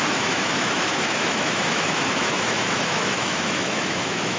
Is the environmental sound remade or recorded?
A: remade